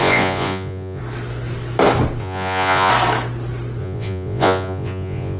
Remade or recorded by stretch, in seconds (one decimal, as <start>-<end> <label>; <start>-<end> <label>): 0.0-1.0 remade; 1.0-2.2 recorded; 2.2-2.9 remade; 2.9-3.8 recorded; 3.8-5.4 remade